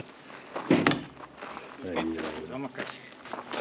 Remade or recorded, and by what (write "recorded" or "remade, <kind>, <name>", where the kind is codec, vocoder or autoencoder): recorded